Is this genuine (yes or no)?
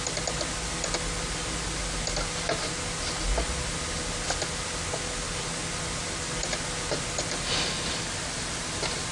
yes